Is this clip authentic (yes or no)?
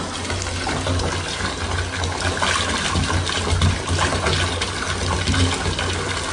yes